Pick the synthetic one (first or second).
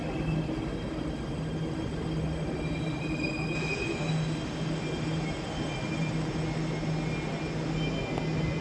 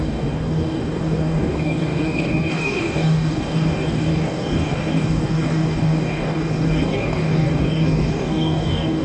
second